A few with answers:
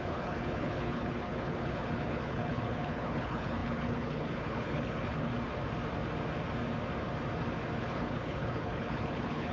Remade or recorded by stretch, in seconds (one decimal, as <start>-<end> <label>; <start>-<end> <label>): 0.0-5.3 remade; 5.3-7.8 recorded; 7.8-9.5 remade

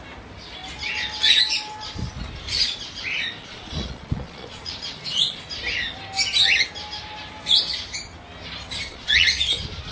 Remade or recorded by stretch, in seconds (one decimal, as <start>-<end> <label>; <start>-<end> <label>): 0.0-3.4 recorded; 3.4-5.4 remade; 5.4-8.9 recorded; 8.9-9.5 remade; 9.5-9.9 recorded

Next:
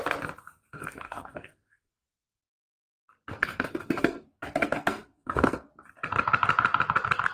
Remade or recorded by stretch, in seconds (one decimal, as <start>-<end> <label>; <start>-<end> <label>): 0.0-0.7 recorded; 0.7-2.5 remade; 2.5-3.3 recorded; 3.3-5.7 remade; 5.7-7.3 recorded